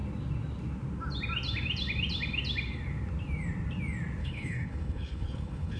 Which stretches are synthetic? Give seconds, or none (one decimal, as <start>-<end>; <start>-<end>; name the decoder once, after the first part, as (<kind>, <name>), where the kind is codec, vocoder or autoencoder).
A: 4.2-5.8 (codec, HILCodec)